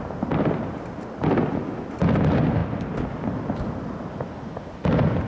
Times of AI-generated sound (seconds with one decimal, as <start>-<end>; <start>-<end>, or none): none